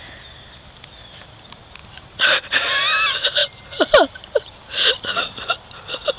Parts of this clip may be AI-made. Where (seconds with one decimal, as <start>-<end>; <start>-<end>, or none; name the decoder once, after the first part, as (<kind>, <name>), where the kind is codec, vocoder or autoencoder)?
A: 1.8-2.7 (vocoder, BigVGAN v2)